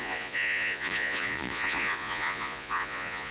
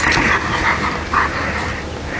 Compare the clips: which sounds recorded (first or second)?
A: second